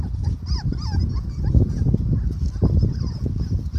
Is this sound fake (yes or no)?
no